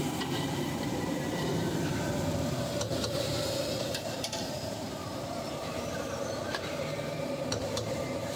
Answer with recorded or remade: remade